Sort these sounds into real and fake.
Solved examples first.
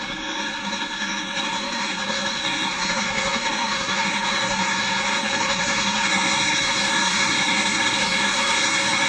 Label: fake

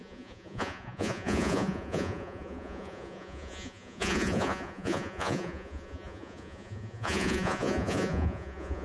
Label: fake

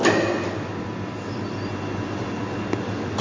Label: real